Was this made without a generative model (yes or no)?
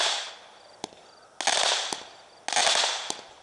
yes